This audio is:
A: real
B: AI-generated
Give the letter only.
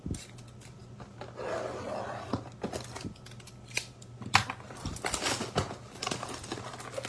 A